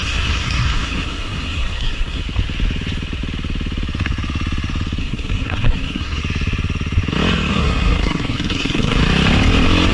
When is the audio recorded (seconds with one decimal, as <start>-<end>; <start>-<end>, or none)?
2.2-5.0; 6.2-7.5; 9.0-9.9